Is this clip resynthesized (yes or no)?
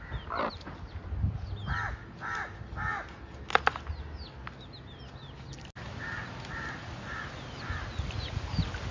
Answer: no